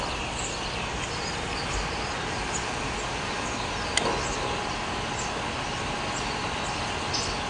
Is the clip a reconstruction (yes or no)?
no